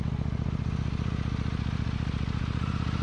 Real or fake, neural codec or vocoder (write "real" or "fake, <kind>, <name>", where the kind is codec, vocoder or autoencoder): real